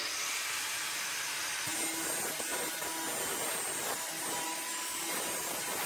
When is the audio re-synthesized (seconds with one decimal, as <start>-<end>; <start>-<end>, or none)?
none